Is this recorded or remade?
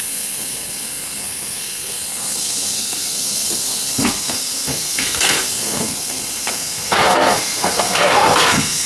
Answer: remade